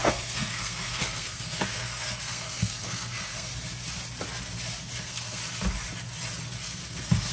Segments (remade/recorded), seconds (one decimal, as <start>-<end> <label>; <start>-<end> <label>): 0.0-3.5 remade; 3.5-5.0 recorded; 5.0-5.4 remade; 5.4-6.6 recorded; 6.6-7.3 remade